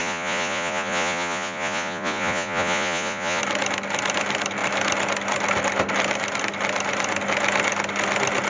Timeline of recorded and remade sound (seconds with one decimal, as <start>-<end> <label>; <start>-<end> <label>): 0.0-3.4 remade; 3.4-8.5 recorded